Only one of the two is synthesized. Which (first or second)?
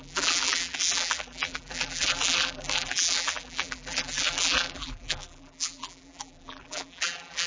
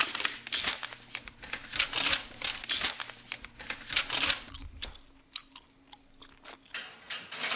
first